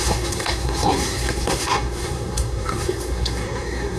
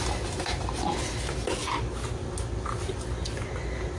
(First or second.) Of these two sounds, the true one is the second